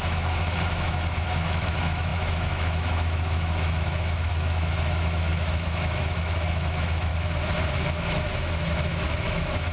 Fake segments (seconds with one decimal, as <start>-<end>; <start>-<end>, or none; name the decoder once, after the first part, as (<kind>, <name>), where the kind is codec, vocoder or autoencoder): 0.0-7.1 (autoencoder, DAC-VAE); 7.7-9.7